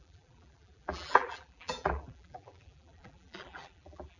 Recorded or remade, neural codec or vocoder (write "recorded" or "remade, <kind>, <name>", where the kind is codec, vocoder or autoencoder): remade, vocoder, BigVGAN v2